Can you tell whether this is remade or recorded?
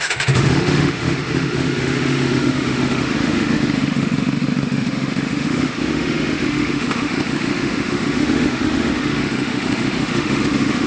remade